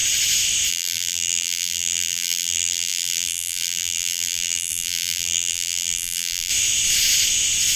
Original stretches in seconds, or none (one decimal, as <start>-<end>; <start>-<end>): 0.0-0.7; 6.5-7.8